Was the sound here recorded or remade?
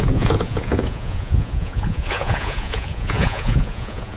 remade